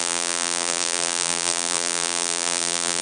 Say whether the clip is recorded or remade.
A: remade